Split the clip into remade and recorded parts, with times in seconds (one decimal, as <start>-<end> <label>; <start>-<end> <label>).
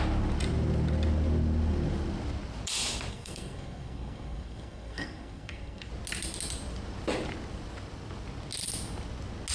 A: 0.0-3.1 recorded; 3.1-5.9 remade; 5.9-9.5 recorded